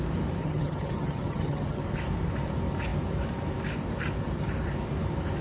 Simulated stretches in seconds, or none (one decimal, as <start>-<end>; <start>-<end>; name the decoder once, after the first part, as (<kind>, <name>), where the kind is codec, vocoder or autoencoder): 0.4-1.8 (vocoder, HiFi-GAN)